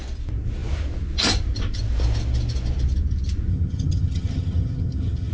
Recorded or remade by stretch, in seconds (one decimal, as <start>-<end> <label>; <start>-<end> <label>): 0.0-3.5 recorded; 3.5-5.3 remade